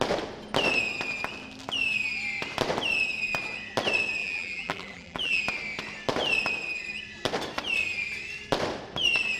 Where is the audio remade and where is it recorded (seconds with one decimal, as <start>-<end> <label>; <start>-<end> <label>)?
0.0-4.2 recorded; 4.2-5.4 remade; 5.4-9.4 recorded